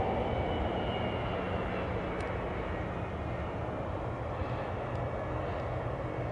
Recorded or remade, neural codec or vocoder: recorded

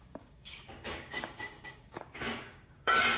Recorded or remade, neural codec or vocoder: remade, codec, DAC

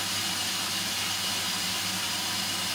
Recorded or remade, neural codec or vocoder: recorded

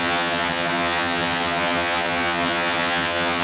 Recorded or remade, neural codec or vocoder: remade, vocoder, HiFi-GAN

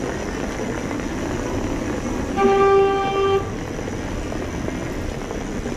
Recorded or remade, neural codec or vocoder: recorded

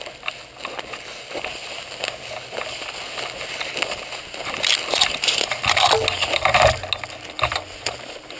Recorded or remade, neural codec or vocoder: recorded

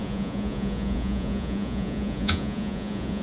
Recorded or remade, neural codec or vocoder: remade, vocoder, Vocos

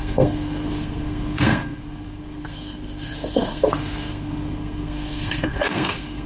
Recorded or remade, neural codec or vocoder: remade, codec, SNAC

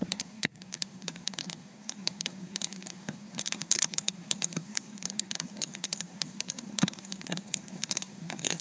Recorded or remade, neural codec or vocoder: remade, codec, SNAC